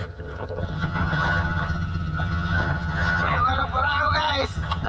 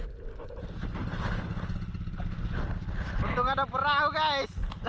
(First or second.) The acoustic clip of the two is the second